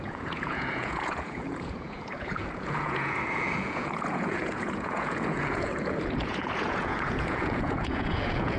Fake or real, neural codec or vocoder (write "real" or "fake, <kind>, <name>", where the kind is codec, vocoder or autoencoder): fake, vocoder, Vocos